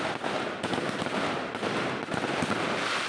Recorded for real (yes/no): yes